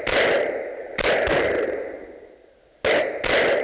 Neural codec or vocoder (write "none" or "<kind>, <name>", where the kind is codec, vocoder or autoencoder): none